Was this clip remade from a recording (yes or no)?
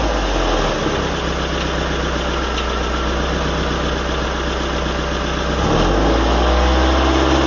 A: no